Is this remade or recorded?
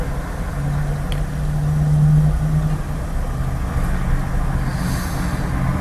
recorded